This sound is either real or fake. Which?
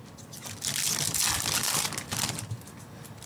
real